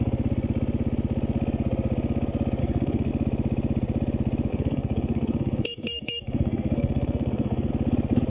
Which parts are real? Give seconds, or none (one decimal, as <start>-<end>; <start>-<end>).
0.0-2.6; 3.1-4.5; 7.7-8.3